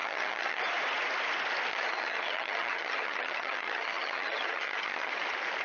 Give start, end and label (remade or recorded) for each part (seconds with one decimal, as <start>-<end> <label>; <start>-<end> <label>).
0.0-0.6 remade; 0.6-1.7 recorded; 1.7-5.1 remade; 5.1-5.6 recorded